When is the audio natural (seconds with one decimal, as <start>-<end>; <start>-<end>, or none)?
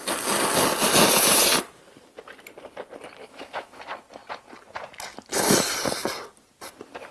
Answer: 0.0-3.2; 3.8-7.1